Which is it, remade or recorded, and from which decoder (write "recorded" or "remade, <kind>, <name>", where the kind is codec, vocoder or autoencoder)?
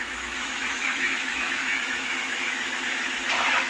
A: remade, autoencoder, DAC-VAE